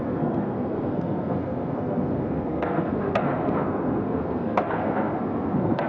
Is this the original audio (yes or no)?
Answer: no